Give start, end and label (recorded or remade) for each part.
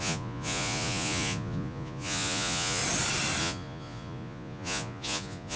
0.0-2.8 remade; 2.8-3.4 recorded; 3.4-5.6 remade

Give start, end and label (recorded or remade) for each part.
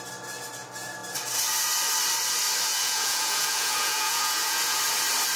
0.0-2.7 recorded; 2.7-4.8 remade; 4.8-5.4 recorded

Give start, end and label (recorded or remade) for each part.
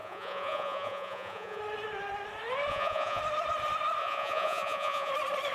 0.0-1.6 remade; 1.6-2.7 recorded; 2.7-3.2 remade; 3.2-4.0 recorded; 4.0-5.1 remade; 5.1-5.5 recorded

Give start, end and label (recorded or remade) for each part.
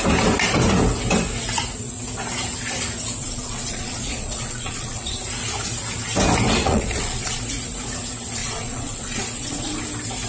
0.0-3.2 recorded; 3.2-5.2 remade; 5.2-6.6 recorded; 6.6-7.4 remade; 7.4-8.4 recorded; 8.4-9.8 remade; 9.8-10.3 recorded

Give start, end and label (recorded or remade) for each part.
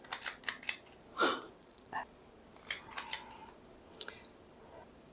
0.0-1.3 recorded; 1.3-1.9 remade; 1.9-5.1 recorded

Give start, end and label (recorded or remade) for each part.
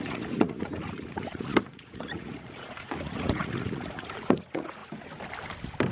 0.0-4.8 remade; 4.8-5.9 recorded